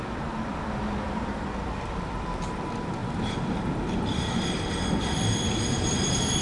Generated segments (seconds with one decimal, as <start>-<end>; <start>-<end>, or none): 0.0-3.0